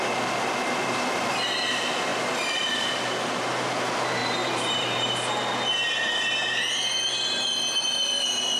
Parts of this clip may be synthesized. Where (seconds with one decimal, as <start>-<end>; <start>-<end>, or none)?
4.2-5.3